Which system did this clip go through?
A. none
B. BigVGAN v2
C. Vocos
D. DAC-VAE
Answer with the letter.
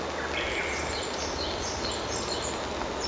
A